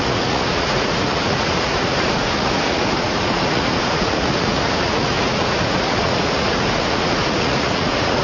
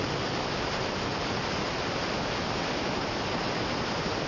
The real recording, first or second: second